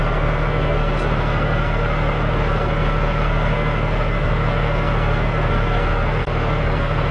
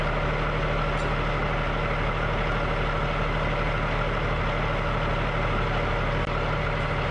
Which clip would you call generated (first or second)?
first